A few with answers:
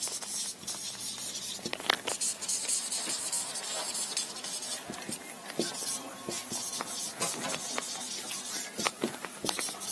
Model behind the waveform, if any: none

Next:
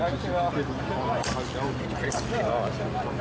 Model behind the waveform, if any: vocoder, BigVGAN v2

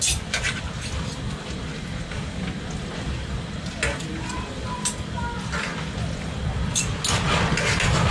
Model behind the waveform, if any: none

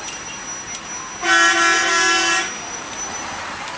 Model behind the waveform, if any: none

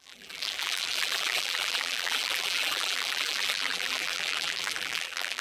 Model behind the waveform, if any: vocoder, BigVGAN v2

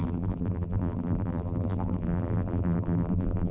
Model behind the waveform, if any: vocoder, BigVGAN v2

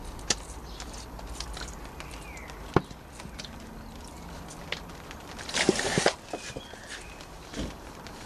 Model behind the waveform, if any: none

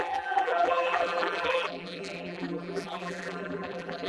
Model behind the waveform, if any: vocoder, BigVGAN v2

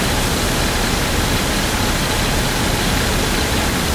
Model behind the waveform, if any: none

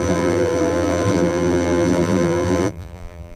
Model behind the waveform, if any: vocoder, BigVGAN v2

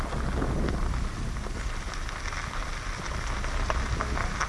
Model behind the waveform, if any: none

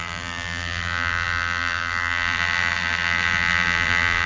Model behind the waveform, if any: vocoder, BigVGAN v2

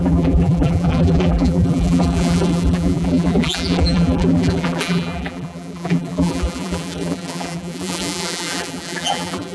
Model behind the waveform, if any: vocoder, BigVGAN v2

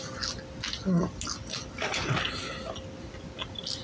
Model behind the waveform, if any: none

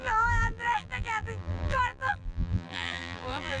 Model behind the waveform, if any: vocoder, BigVGAN v2